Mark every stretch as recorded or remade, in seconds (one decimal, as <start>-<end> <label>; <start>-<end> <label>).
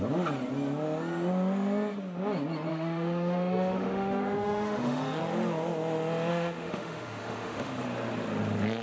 0.0-2.7 recorded; 2.7-5.2 remade; 5.2-6.3 recorded; 6.3-7.7 remade; 7.7-8.8 recorded